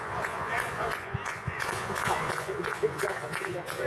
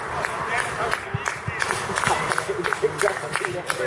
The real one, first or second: second